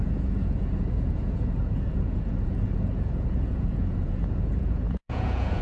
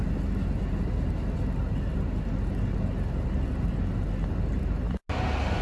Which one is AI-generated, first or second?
first